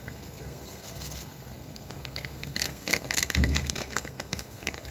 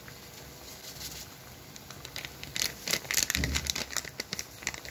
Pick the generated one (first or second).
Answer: first